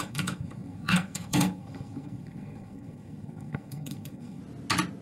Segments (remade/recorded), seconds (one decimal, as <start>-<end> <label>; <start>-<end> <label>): 0.0-4.4 remade; 4.4-5.0 recorded